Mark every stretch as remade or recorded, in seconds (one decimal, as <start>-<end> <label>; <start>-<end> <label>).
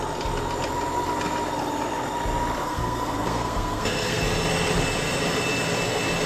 0.0-2.6 recorded; 2.6-4.2 remade; 4.2-6.3 recorded